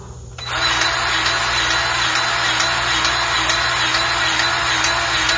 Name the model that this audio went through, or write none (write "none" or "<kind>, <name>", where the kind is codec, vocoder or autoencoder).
none